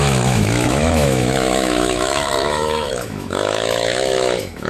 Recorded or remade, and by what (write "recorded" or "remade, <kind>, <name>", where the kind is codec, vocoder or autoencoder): remade, autoencoder, DAC-VAE